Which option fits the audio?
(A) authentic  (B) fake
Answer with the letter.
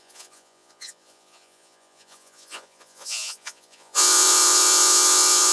B